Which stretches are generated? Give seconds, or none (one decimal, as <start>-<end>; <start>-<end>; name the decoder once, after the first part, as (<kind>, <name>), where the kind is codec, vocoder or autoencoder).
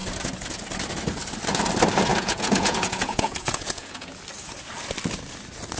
2.1-4.2 (vocoder, Vocos)